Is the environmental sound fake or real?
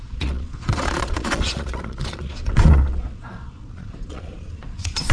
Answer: fake